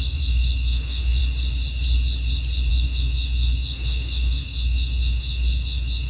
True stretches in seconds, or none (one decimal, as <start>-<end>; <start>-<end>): 1.2-2.7